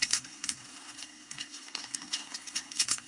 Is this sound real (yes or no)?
no